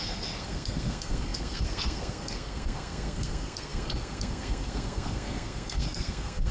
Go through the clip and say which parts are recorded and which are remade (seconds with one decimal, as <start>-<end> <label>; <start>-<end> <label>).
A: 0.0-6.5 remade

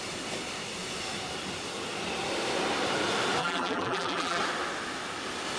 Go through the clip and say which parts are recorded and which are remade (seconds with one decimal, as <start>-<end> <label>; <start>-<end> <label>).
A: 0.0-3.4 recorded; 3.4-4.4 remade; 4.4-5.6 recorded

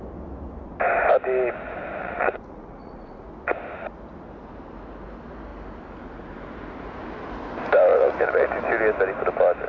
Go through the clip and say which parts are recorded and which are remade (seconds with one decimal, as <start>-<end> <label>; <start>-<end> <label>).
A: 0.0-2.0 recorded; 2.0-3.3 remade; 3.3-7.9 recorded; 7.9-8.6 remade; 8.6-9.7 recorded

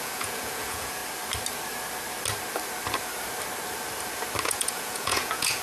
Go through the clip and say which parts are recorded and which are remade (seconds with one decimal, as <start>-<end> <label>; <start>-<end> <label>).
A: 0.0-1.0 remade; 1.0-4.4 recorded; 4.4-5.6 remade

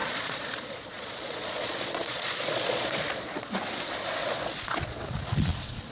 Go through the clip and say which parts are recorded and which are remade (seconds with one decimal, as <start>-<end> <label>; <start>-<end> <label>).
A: 0.0-3.5 remade; 3.5-4.2 recorded; 4.2-5.9 remade

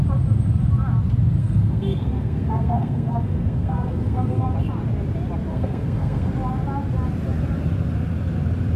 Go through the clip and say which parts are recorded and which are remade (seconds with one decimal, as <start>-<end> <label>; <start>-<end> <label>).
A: 0.0-1.4 recorded; 1.4-4.5 remade; 4.5-5.5 recorded; 5.5-6.3 remade; 6.3-8.8 recorded